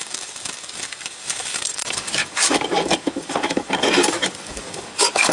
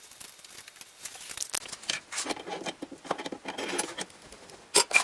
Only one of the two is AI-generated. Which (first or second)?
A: first